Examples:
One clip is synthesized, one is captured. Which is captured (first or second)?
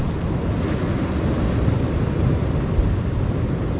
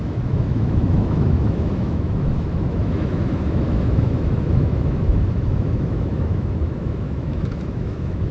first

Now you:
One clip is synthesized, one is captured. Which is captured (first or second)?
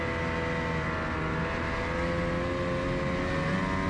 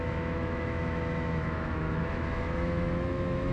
first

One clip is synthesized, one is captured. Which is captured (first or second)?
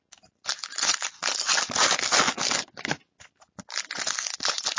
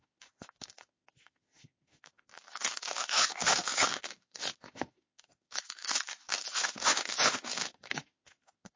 first